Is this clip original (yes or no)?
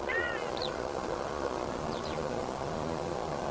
no